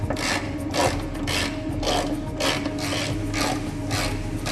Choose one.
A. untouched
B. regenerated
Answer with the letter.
A